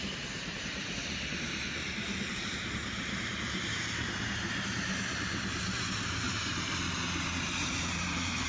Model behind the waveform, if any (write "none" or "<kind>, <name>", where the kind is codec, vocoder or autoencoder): vocoder, BigVGAN v2